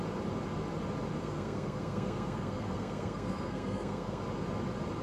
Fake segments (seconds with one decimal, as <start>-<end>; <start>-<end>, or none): 1.2-4.2